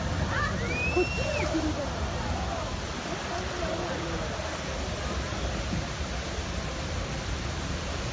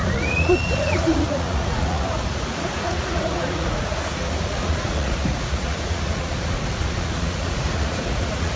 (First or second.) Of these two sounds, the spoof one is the second